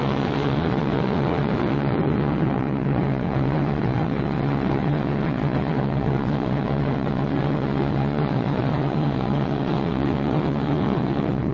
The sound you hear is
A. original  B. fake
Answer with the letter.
B